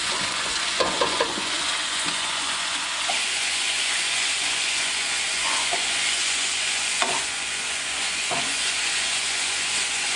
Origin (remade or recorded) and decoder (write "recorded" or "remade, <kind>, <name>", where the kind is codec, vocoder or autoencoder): remade, vocoder, Vocos